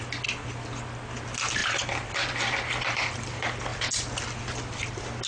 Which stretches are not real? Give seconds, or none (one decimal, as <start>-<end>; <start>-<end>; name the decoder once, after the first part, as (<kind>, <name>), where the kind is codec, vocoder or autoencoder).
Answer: none

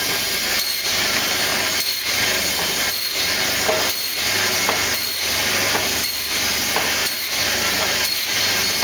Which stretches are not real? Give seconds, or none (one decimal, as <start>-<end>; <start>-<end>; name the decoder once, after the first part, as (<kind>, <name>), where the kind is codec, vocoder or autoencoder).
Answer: 7.0-7.8 (vocoder, BigVGAN v2)

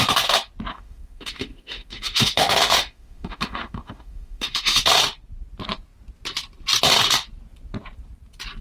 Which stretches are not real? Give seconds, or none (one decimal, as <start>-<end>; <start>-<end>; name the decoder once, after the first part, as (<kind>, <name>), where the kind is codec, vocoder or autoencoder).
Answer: 0.7-4.9 (autoencoder, DAC-VAE)

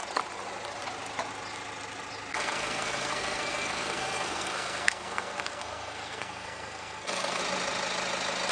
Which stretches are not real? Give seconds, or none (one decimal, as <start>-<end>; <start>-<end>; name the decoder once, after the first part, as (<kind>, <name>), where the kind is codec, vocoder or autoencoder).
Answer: 2.3-7.4 (codec, SNAC)

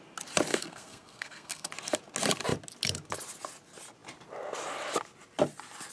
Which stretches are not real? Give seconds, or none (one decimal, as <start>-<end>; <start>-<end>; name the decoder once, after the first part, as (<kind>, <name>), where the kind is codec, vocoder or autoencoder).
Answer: 0.5-1.7 (codec, SNAC)

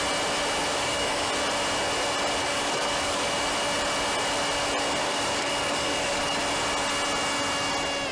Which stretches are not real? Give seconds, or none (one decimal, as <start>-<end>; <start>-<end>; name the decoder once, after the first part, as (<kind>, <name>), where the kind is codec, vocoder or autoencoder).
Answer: 0.7-1.3 (codec, DAC); 2.4-3.5; 5.0-6.4

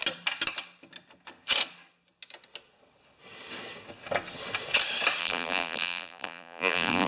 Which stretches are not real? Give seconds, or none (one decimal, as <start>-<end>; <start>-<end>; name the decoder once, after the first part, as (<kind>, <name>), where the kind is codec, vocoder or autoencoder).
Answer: 5.2-7.1 (vocoder, BigVGAN v2)